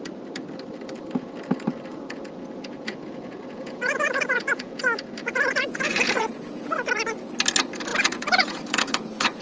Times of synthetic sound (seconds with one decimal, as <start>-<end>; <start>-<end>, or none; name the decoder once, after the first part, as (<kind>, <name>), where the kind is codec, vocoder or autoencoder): 1.9-4.8 (vocoder, Vocos); 5.2-6.9; 7.9-9.4